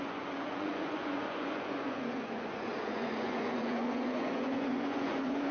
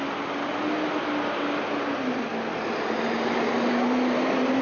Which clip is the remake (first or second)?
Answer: first